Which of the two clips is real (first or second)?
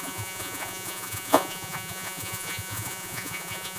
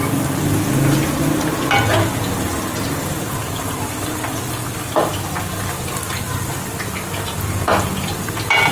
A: second